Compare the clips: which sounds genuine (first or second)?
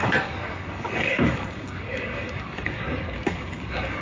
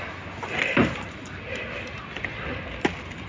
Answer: second